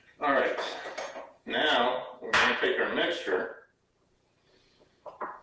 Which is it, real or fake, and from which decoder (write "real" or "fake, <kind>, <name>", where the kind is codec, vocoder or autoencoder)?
fake, vocoder, Vocos